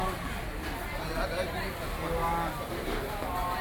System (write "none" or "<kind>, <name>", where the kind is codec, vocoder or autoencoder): none